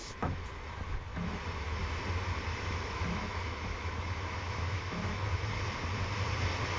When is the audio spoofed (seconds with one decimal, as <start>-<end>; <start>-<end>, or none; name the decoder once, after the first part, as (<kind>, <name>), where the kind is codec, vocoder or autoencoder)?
0.0-0.5 (autoencoder, DAC-VAE); 1.1-1.8; 2.5-5.5